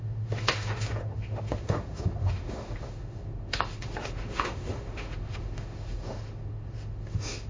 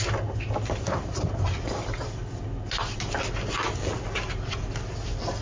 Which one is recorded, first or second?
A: second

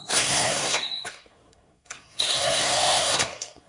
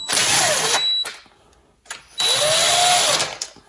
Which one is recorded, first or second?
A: second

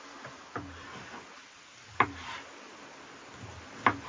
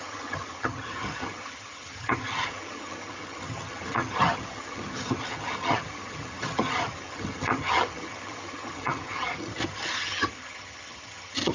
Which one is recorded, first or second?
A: first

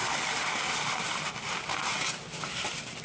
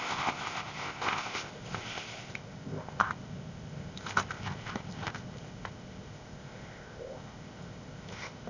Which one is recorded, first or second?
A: first